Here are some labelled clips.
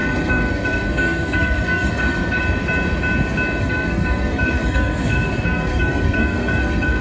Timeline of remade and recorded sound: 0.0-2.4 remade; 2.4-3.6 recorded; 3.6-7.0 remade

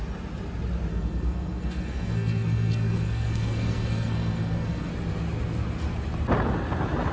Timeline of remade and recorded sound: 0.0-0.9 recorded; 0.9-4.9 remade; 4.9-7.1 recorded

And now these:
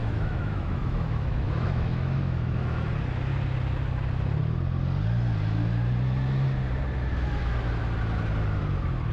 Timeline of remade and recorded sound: 0.0-2.9 remade; 2.9-9.1 recorded